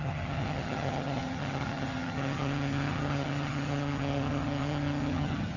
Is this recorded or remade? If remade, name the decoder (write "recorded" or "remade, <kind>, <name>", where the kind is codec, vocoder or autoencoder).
remade, vocoder, HiFi-GAN